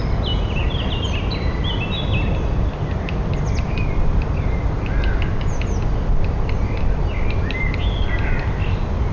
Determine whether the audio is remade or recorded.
recorded